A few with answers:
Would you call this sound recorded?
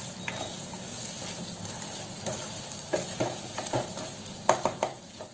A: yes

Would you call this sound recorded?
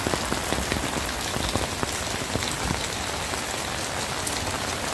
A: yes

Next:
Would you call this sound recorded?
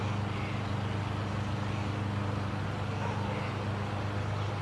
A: yes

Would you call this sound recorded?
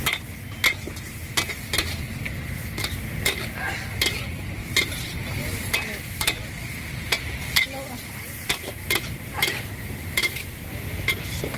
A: yes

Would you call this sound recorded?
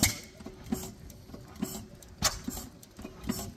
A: yes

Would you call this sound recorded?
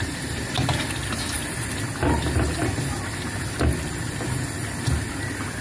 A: yes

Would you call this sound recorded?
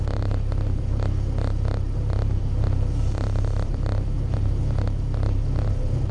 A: no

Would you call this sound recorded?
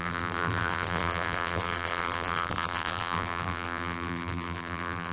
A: no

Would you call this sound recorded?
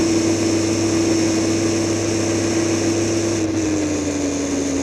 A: yes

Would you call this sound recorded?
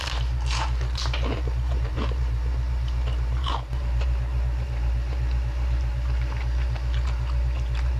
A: no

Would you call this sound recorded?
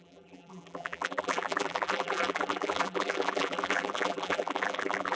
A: no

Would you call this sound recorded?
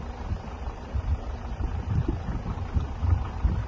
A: no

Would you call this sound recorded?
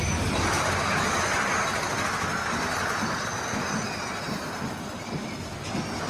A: yes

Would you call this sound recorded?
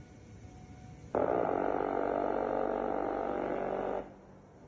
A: yes